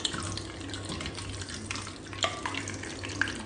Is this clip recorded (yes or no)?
yes